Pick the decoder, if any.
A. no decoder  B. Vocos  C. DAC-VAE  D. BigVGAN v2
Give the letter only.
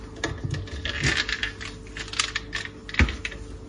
A